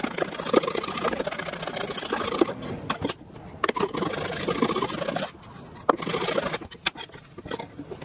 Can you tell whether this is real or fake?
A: real